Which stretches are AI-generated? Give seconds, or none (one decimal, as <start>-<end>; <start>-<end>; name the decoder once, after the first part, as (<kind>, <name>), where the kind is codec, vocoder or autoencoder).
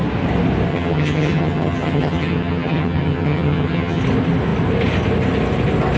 0.7-4.0 (vocoder, HiFi-GAN)